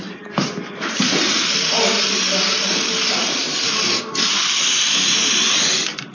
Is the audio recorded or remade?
remade